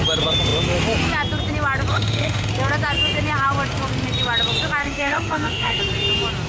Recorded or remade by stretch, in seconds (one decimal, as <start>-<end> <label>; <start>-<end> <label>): 0.0-1.9 recorded; 1.9-2.5 remade; 2.5-4.8 recorded; 4.8-5.8 remade; 5.8-6.5 recorded